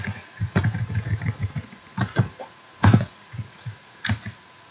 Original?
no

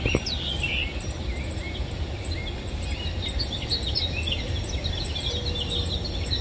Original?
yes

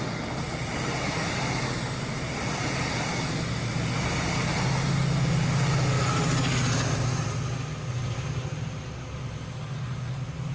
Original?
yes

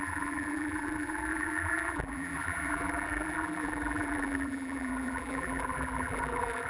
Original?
no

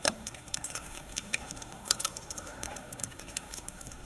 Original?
no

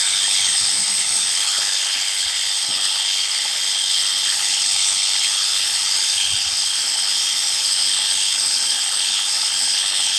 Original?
no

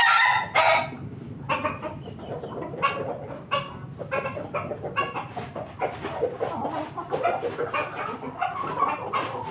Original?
yes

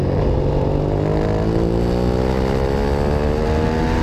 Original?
yes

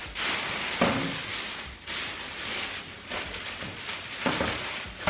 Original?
no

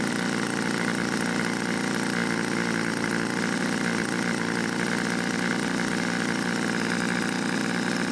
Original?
yes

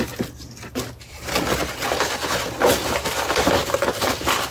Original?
yes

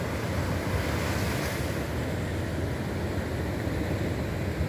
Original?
yes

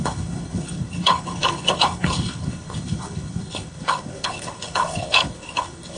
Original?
no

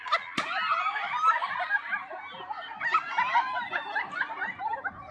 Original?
yes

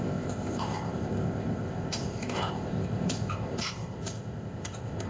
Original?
no